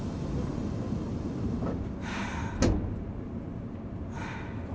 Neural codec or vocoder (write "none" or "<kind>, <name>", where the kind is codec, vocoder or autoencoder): none